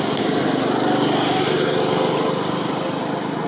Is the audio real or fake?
real